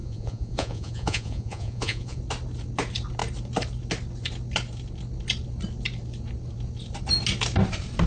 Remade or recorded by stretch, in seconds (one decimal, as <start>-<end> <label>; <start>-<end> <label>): 0.0-2.2 remade; 2.2-8.1 recorded